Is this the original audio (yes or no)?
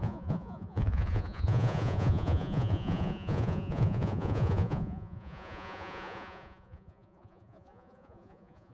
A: no